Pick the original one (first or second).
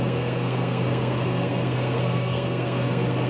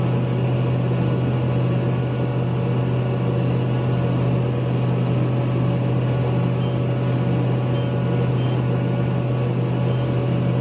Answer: second